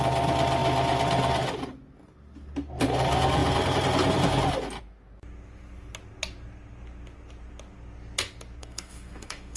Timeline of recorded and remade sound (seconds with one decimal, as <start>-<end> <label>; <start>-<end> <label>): 0.0-8.6 recorded; 8.6-9.6 remade